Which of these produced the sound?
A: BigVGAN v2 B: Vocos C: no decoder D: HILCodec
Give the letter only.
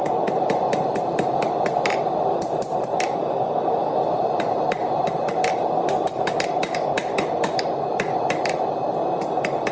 C